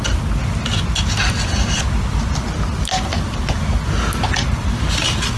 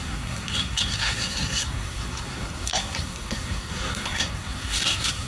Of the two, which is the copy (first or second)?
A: second